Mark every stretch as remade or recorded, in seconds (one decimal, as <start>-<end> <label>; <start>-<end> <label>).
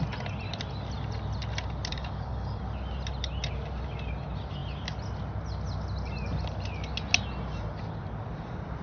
0.0-1.9 recorded; 1.9-2.6 remade; 2.6-8.8 recorded